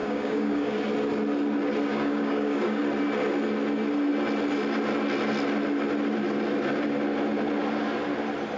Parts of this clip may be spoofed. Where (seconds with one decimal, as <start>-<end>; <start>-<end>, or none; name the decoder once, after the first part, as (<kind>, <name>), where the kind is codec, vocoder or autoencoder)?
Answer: 0.0-0.8 (codec, DAC); 1.9-2.8